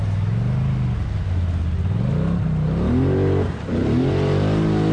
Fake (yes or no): no